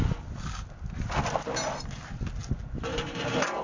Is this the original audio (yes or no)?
yes